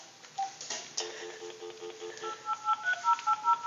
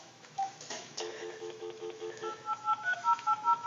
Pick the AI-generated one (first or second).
second